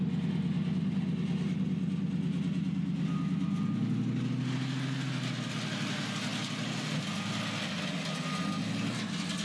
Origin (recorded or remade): recorded